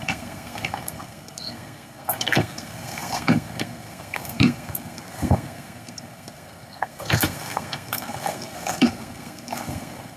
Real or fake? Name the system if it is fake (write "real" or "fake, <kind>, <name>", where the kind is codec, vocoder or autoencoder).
fake, codec, SNAC